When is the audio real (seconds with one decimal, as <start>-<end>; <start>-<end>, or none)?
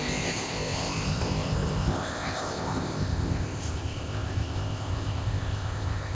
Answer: none